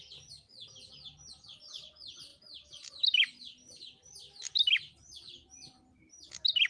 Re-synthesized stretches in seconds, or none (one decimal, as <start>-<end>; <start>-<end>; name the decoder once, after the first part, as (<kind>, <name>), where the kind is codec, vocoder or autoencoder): none